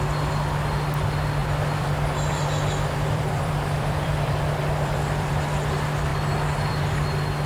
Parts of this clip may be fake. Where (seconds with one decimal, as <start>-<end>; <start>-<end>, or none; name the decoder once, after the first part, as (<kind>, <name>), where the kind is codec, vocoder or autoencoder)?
1.4-5.3 (vocoder, BigVGAN v2)